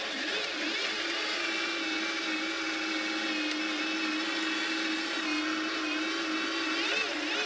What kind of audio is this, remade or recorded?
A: recorded